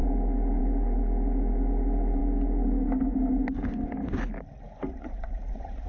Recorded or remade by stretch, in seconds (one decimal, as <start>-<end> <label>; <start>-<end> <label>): 0.0-4.9 recorded; 4.9-5.9 remade